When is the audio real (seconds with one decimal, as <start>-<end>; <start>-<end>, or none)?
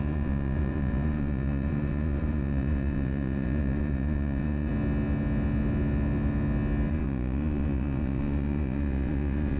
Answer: 4.7-6.9